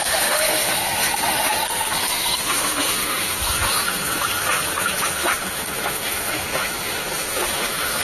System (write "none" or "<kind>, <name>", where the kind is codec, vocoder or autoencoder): autoencoder, DAC-VAE